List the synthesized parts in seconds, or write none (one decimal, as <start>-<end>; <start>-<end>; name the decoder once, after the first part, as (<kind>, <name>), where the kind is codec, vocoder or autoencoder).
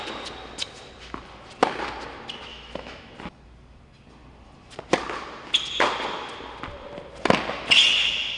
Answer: 2.5-3.1 (autoencoder, DAC-VAE)